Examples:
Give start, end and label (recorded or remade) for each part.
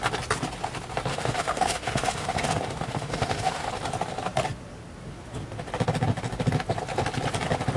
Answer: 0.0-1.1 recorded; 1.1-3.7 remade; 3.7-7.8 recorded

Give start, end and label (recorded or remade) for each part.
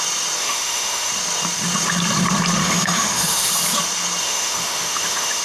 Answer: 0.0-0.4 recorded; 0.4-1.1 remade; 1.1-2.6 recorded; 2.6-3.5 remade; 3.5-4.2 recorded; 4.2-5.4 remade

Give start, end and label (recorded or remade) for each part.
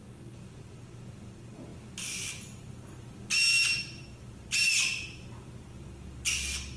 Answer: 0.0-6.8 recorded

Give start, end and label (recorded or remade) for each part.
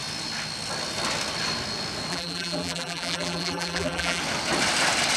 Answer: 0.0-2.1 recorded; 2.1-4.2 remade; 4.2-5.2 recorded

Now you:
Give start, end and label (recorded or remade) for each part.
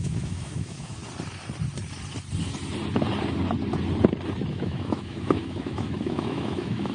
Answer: 0.0-1.0 remade; 1.0-4.5 recorded; 4.5-6.9 remade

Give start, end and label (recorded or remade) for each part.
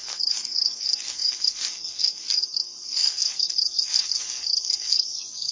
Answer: 0.0-5.5 remade